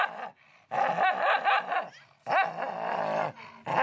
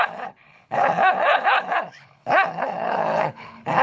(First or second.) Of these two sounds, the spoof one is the second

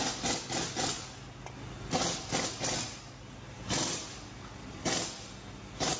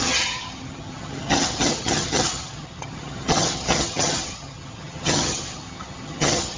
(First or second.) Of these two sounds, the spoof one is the second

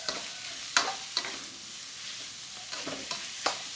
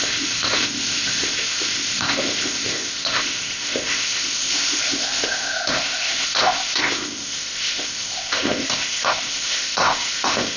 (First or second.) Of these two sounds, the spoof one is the second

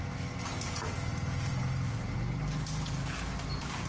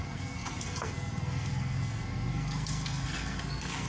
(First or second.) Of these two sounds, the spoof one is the second